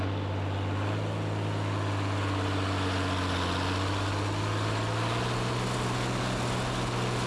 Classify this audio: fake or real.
real